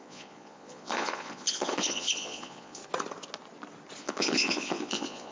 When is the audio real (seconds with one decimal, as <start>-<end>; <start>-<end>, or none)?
2.8-4.0